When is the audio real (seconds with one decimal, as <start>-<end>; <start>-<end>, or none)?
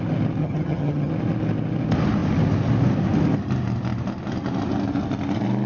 0.0-0.4; 1.1-5.7